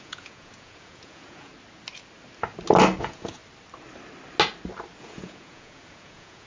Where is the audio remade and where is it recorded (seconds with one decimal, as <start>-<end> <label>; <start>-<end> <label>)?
0.0-1.5 remade; 1.5-3.0 recorded; 3.0-3.4 remade; 3.4-5.0 recorded; 5.0-6.5 remade